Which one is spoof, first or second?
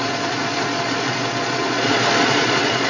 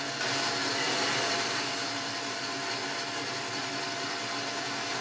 first